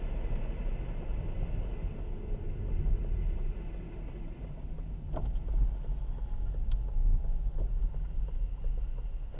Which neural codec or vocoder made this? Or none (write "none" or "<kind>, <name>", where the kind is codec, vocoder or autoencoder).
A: none